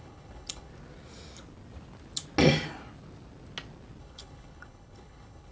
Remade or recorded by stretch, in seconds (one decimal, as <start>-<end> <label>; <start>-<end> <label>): 0.0-0.7 remade; 0.7-4.0 recorded; 4.0-5.5 remade